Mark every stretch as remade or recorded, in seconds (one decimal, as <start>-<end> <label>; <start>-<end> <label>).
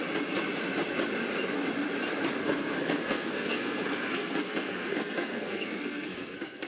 0.0-2.4 recorded; 2.4-6.7 remade